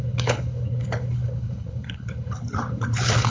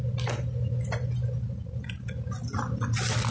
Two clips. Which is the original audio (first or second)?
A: second